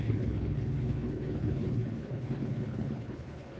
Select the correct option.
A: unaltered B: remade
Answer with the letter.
B